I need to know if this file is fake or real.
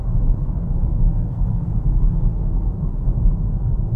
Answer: fake